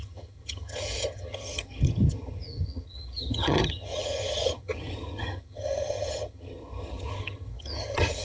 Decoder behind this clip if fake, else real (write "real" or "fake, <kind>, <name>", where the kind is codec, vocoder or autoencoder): fake, vocoder, HiFi-GAN